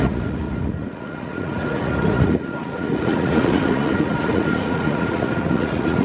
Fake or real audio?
fake